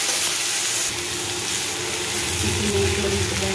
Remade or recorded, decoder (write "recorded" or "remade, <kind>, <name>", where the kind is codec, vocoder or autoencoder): recorded